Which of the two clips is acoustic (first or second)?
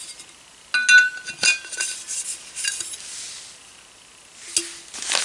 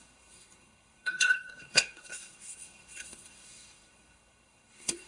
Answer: first